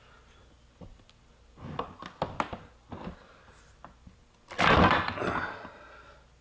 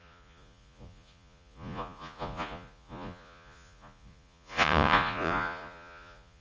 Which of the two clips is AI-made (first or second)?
second